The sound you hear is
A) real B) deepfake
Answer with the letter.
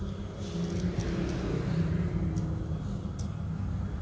A